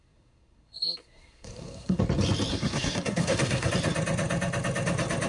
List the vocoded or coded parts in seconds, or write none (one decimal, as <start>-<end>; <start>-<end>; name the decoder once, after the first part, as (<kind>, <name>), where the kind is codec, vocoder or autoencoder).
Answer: 0.0-2.0 (codec, SNAC); 2.5-3.7